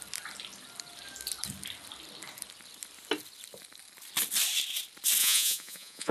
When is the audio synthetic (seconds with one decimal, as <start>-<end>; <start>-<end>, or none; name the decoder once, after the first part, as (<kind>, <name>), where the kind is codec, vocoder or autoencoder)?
5.2-6.1 (vocoder, Vocos)